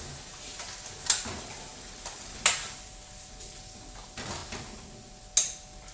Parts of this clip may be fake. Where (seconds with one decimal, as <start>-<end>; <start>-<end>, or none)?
none